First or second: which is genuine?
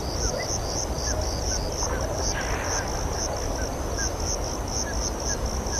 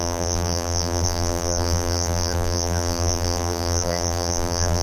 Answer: first